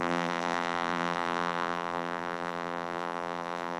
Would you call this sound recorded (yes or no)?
no